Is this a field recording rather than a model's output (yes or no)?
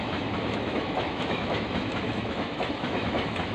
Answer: no